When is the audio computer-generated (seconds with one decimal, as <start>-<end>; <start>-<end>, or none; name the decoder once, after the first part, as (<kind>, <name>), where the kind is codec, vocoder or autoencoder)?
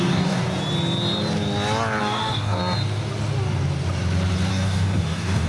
0.0-0.4 (codec, DAC); 2.0-2.6; 4.5-5.5